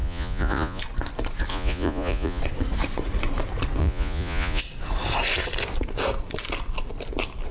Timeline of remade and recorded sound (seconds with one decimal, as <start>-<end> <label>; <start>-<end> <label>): 0.0-0.8 remade; 0.8-1.5 recorded; 1.5-2.4 remade; 2.4-3.8 recorded; 3.8-4.6 remade; 4.6-7.5 recorded